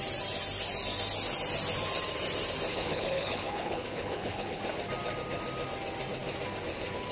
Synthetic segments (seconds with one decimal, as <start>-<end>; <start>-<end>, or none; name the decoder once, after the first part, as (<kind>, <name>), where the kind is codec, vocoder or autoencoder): 2.7-4.6 (codec, HILCodec)